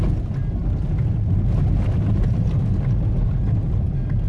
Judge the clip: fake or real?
real